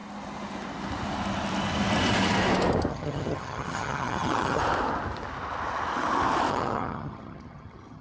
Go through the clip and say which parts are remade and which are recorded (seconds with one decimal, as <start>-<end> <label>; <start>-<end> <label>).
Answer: 0.0-2.9 recorded; 2.9-4.6 remade; 4.6-6.5 recorded; 6.5-8.0 remade